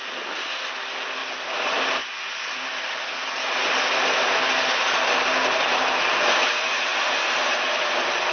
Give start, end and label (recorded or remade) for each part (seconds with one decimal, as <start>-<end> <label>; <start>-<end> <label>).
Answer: 0.0-8.3 recorded